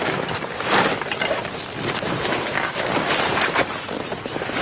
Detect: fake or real real